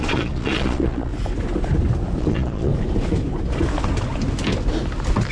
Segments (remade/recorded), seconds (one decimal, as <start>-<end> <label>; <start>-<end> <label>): 0.0-1.1 remade; 1.1-2.2 recorded; 2.2-2.7 remade; 2.7-5.3 recorded